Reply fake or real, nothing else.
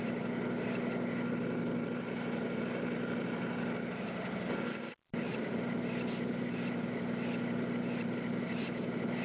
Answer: real